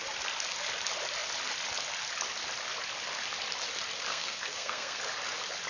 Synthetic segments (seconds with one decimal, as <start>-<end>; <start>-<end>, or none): 4.1-5.0